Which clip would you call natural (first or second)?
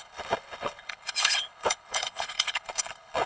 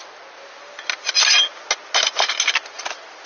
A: second